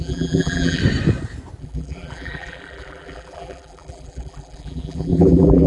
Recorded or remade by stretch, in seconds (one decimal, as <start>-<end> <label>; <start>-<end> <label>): 0.0-0.8 remade; 0.8-1.6 recorded; 1.6-5.7 remade